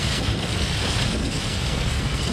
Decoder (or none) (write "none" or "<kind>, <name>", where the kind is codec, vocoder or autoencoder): codec, SNAC